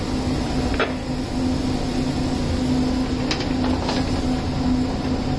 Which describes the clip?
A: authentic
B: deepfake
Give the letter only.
A